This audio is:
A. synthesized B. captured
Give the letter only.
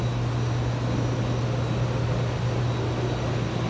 B